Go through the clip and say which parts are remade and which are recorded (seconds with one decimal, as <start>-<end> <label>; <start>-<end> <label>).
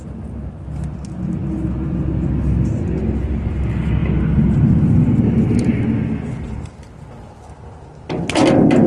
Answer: 0.0-8.9 recorded